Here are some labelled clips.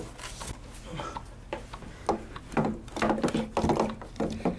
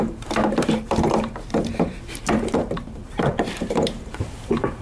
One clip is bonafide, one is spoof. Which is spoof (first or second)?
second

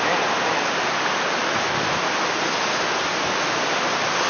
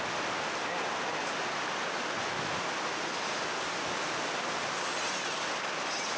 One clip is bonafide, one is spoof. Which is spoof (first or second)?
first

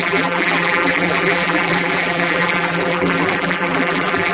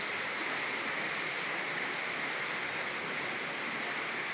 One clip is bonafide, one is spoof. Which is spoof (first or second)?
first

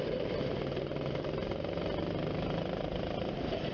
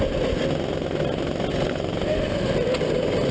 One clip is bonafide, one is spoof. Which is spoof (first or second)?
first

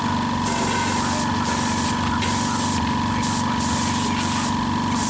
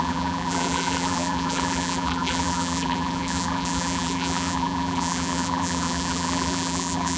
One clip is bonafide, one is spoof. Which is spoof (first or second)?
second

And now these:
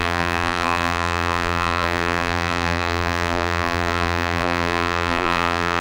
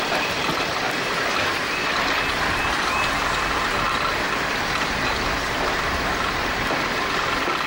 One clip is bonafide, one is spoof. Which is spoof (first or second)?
first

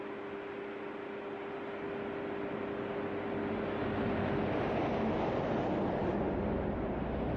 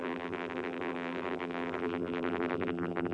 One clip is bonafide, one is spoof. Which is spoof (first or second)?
second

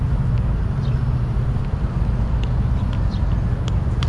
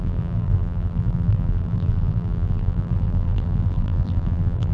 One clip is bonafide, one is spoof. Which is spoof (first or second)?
second